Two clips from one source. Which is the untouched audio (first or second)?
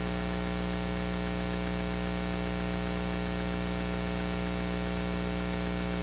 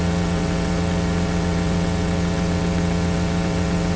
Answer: first